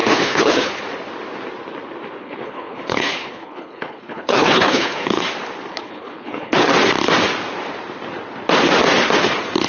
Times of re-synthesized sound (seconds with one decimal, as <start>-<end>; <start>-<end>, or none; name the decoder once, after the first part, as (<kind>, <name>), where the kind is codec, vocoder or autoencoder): 0.0-0.8 (codec, HILCodec); 2.2-5.2; 5.7-6.7